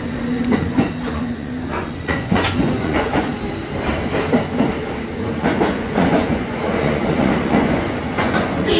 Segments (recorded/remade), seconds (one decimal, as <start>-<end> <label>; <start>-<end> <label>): 0.0-3.3 remade; 3.3-5.1 recorded; 5.1-8.8 remade